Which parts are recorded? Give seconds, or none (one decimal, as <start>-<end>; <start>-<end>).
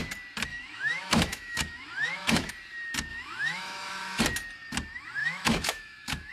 0.0-0.5; 2.5-3.1; 4.2-5.2